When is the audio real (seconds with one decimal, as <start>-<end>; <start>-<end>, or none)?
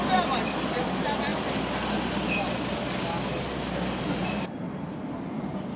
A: 0.0-5.8